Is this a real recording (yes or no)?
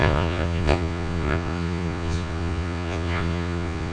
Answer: no